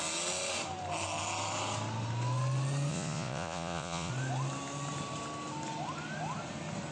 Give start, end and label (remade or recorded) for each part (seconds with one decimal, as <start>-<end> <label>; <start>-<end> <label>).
0.0-2.9 recorded; 2.9-4.1 remade; 4.1-6.9 recorded